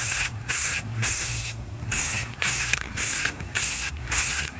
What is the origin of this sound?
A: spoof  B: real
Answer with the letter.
A